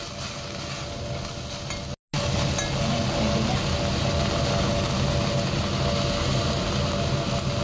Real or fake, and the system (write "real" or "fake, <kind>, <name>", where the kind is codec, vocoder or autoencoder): real